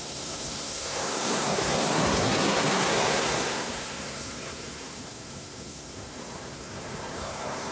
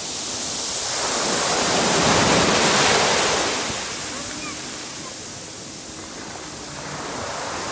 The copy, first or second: first